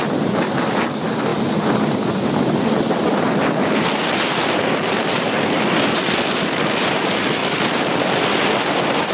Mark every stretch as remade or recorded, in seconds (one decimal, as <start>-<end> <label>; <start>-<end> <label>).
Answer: 0.0-1.3 recorded; 1.3-5.1 remade; 5.1-7.4 recorded; 7.4-8.2 remade; 8.2-9.1 recorded